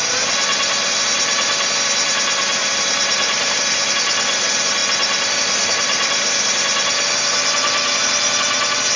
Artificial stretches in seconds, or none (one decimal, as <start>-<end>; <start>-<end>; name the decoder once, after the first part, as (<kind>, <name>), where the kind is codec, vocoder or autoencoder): 2.6-3.9 (vocoder, BigVGAN v2); 4.8-6.3